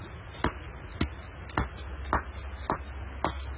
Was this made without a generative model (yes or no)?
yes